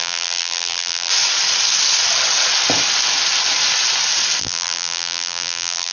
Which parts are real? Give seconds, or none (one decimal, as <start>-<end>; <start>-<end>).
1.1-4.4